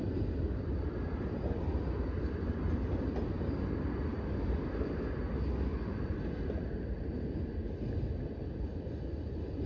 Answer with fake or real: real